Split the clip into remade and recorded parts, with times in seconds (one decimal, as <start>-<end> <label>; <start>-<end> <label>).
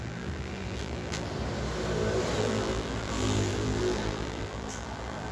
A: 0.0-1.3 remade; 1.3-2.4 recorded; 2.4-5.3 remade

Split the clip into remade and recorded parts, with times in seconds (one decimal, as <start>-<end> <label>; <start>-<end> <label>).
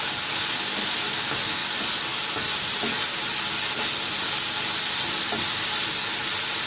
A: 0.0-6.7 recorded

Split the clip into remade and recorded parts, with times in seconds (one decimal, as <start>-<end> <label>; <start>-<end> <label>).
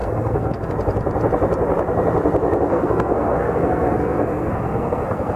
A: 0.0-0.7 remade; 0.7-2.7 recorded; 2.7-5.4 remade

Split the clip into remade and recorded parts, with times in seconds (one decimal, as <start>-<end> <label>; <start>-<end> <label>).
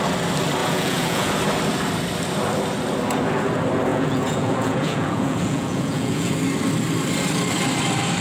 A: 0.0-0.6 recorded; 0.6-1.3 remade; 1.3-3.9 recorded; 3.9-6.3 remade; 6.3-8.2 recorded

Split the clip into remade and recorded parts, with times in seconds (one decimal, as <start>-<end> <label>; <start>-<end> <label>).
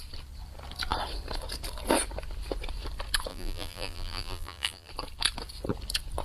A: 0.0-3.3 recorded; 3.3-4.9 remade; 4.9-6.2 recorded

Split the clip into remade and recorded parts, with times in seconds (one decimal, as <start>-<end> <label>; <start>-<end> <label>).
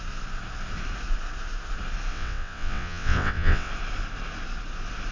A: 0.0-2.1 recorded; 2.1-3.7 remade; 3.7-5.1 recorded